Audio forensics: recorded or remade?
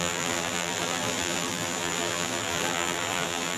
remade